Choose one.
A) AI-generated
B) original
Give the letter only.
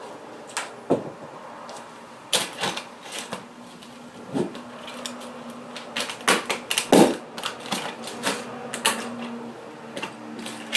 B